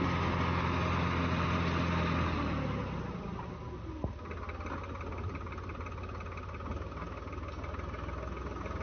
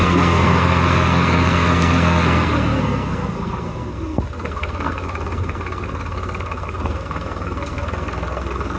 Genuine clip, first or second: first